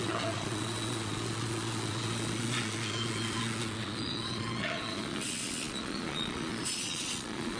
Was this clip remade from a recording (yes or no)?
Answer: yes